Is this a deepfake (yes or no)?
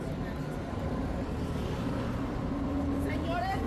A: no